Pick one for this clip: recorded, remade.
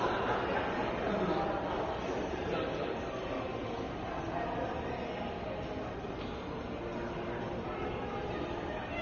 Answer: recorded